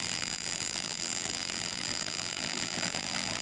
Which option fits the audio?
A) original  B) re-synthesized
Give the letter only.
B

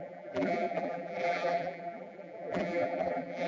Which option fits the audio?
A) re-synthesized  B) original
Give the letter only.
A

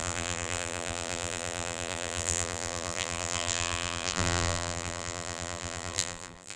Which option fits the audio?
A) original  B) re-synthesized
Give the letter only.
B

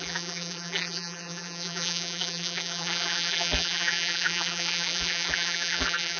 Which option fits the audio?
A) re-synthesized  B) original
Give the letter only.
A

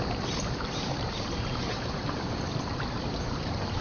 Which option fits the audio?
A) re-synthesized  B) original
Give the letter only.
A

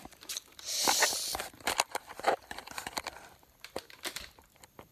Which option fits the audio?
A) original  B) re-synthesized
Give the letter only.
B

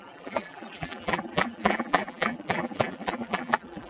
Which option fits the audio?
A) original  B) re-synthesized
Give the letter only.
B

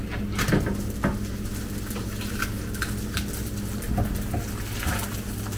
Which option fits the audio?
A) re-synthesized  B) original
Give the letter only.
B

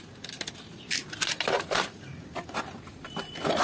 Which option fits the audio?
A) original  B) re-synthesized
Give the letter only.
A